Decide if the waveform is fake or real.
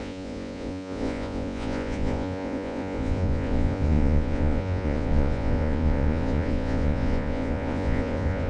fake